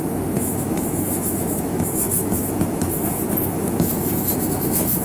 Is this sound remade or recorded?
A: remade